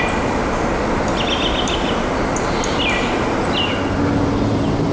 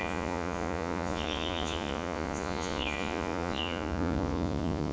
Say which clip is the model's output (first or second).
second